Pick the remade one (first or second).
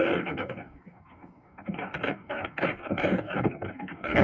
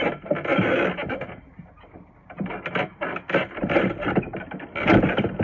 first